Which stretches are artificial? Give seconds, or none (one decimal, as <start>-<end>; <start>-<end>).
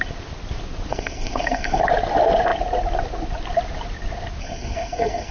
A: 0.9-1.8; 4.4-5.3